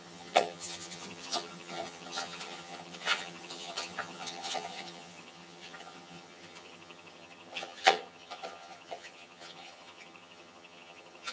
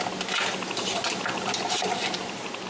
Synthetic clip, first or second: first